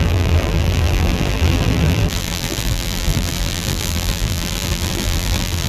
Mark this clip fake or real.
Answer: fake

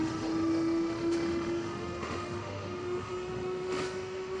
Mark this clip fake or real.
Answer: fake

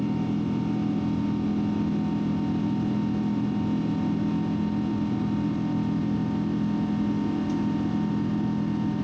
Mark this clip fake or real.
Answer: real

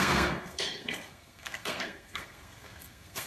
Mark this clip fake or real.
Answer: fake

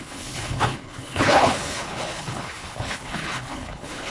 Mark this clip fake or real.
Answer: fake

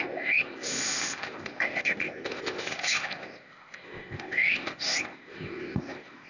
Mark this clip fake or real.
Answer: fake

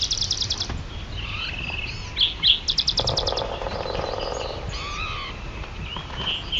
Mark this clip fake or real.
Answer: real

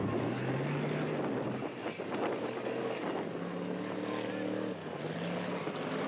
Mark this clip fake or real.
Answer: real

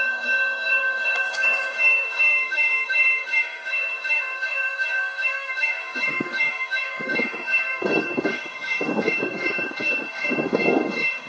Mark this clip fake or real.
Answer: fake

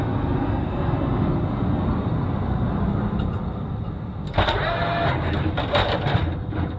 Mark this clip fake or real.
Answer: real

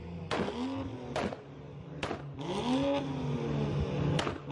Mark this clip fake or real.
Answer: real